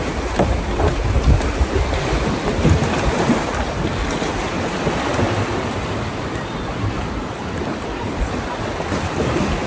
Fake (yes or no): no